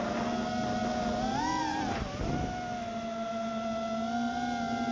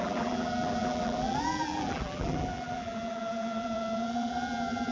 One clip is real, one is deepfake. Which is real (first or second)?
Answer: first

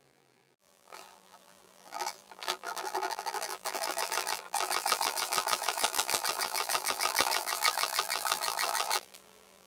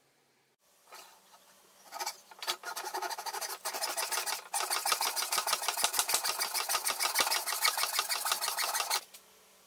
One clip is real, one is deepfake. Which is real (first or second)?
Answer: second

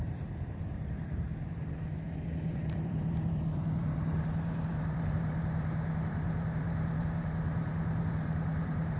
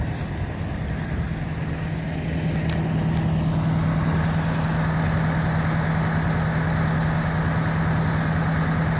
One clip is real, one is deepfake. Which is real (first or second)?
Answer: second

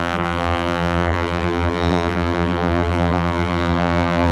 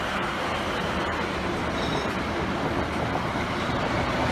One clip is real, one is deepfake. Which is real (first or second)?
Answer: second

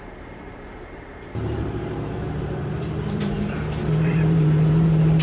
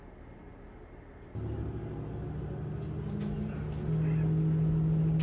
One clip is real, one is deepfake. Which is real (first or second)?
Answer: second